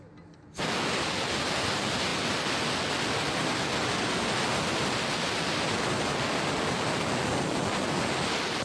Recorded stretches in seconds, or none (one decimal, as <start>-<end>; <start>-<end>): 0.0-8.6